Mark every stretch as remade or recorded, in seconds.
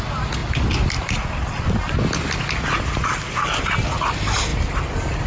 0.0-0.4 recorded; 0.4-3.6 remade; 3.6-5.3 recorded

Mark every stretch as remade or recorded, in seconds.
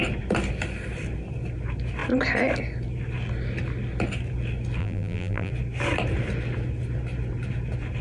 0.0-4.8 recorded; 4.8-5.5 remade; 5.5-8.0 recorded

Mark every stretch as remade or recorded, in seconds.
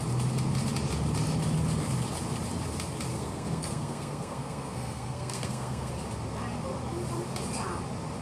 0.0-3.1 recorded; 3.1-5.9 remade; 5.9-8.2 recorded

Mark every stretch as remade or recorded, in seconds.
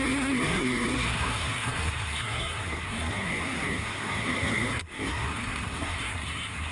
0.0-6.7 remade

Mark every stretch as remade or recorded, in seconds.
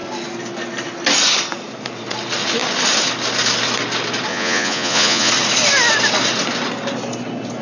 0.0-4.3 recorded; 4.3-5.3 remade; 5.3-7.6 recorded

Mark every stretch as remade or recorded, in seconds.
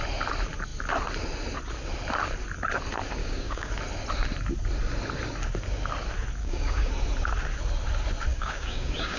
0.0-3.2 recorded; 3.2-3.7 remade; 3.7-6.4 recorded; 6.4-6.9 remade; 6.9-8.3 recorded; 8.3-9.2 remade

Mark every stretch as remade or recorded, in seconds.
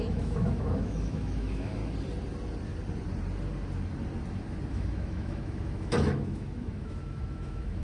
0.0-1.8 remade; 1.8-4.7 recorded; 4.7-7.8 remade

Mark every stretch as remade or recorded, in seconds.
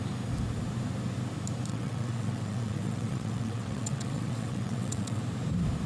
0.0-1.7 recorded; 1.7-5.2 remade; 5.2-5.9 recorded